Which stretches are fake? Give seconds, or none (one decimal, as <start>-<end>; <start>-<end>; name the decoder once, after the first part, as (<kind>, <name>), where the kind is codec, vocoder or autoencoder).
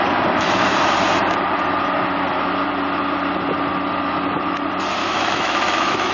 5.0-6.1 (autoencoder, DAC-VAE)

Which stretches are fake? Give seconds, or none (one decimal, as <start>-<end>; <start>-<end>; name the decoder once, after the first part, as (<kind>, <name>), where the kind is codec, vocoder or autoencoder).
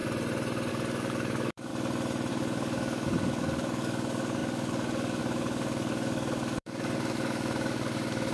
0.7-1.7 (codec, DAC); 2.3-8.3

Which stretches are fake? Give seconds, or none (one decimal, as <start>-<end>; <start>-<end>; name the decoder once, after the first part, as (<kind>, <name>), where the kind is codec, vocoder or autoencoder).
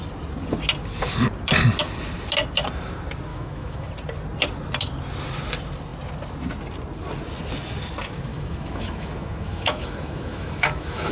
3.3-3.9 (autoencoder, DAC-VAE); 8.3-11.1